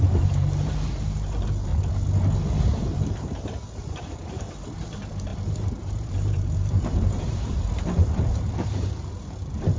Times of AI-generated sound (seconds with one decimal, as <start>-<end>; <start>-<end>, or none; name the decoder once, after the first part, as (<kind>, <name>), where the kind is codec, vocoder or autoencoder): 0.0-1.7 (vocoder, BigVGAN v2); 2.6-9.8